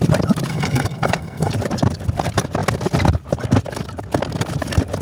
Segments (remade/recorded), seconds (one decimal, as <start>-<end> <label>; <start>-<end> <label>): 0.0-0.5 recorded; 0.5-1.5 remade; 1.5-5.0 recorded